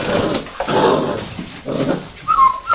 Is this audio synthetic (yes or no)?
no